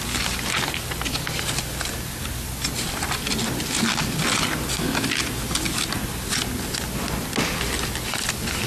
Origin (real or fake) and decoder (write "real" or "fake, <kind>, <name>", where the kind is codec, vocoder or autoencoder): real